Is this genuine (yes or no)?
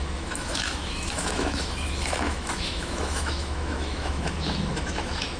no